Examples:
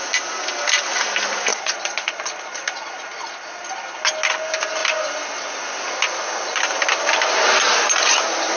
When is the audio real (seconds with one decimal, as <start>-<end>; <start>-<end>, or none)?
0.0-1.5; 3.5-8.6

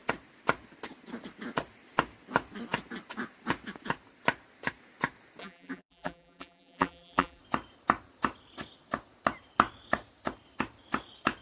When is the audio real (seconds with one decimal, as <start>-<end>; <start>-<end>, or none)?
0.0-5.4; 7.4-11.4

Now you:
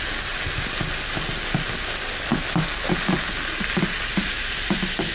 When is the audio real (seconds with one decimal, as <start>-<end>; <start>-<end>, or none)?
0.0-5.1